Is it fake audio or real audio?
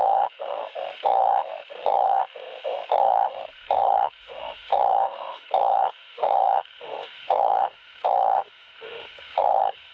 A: fake